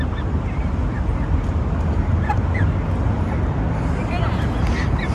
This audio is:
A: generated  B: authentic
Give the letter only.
B